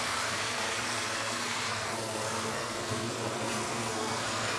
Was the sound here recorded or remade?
remade